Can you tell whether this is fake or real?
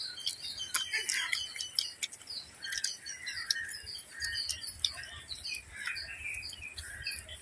real